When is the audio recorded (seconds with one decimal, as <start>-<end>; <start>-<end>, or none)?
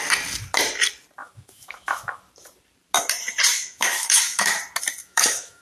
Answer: 0.0-1.2; 2.2-3.5; 4.6-5.0